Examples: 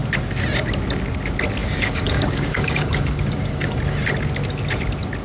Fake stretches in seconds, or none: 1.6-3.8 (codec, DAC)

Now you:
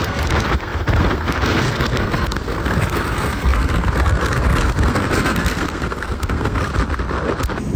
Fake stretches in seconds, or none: 0.0-6.7 (codec, SNAC)

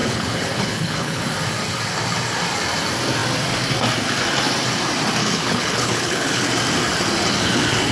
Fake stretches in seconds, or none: 0.0-1.2 (codec, HILCodec); 5.2-6.4

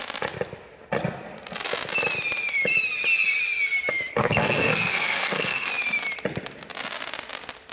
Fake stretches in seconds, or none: 4.2-5.7 (codec, SNAC)

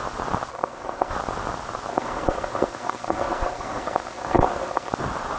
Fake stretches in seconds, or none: 0.5-1.1 (codec, SNAC); 1.9-4.9

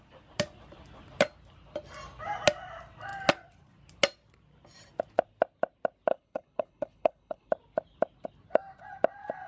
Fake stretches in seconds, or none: 6.1-7.5 (codec, HILCodec)

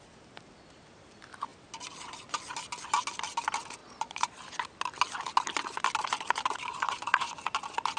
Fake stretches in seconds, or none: 3.8-4.4 (vocoder, Vocos); 6.7-7.3

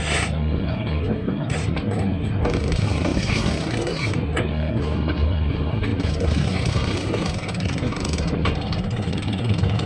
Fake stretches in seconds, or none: 0.0-9.9 (codec, SNAC)